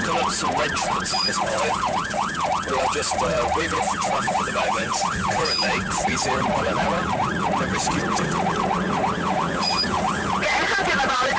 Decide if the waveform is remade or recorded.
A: remade